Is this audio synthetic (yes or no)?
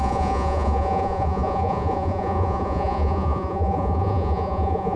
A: yes